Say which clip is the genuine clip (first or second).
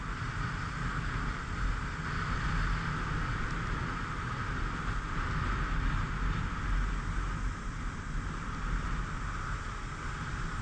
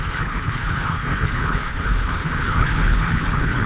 first